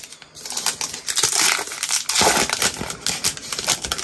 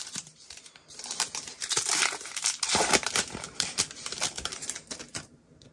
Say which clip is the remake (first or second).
second